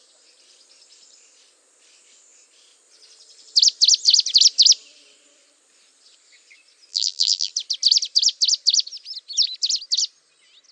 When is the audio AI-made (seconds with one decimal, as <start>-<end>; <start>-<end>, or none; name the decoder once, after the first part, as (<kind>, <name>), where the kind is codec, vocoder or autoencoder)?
6.9-7.5 (vocoder, BigVGAN v2)